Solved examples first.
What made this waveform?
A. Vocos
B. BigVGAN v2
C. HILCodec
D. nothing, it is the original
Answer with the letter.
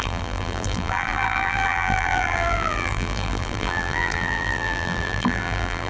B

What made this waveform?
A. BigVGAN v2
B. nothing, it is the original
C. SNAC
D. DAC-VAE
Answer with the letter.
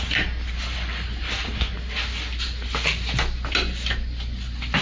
B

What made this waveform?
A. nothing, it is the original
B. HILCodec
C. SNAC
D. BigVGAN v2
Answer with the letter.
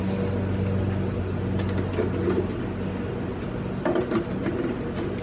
A